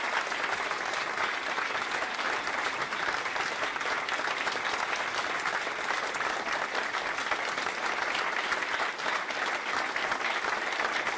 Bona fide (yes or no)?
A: yes